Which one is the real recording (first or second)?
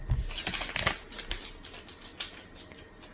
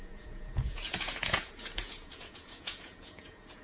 first